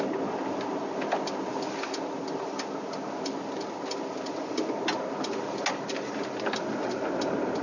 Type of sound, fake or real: real